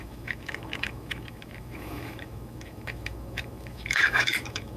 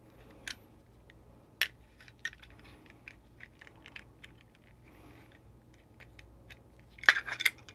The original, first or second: second